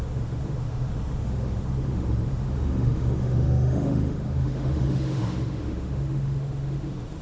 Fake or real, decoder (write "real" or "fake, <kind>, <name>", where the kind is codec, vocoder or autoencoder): fake, autoencoder, DAC-VAE